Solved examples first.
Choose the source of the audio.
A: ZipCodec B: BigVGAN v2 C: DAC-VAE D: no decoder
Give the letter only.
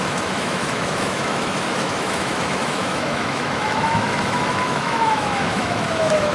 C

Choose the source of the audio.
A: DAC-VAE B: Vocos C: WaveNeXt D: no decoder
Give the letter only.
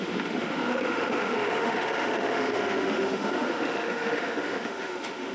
A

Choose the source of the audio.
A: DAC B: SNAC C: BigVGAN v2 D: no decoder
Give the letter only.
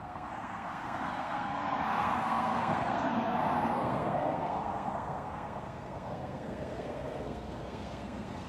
B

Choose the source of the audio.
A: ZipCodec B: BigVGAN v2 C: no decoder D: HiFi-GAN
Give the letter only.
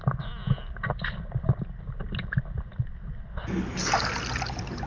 C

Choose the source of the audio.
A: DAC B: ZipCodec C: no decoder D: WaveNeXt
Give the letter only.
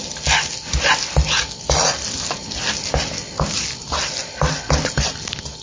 C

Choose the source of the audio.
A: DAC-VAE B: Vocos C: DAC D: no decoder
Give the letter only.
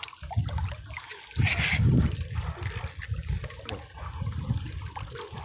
D